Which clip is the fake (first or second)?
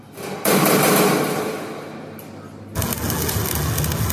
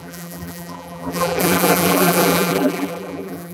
second